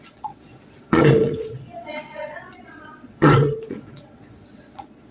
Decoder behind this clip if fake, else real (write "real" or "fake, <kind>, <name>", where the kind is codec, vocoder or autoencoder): fake, vocoder, Vocos